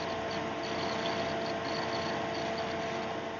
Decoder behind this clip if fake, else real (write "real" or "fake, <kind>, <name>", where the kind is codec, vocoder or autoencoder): real